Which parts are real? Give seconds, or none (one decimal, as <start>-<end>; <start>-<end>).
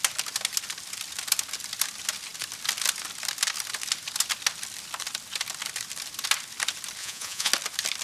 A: 0.0-7.0; 7.5-8.0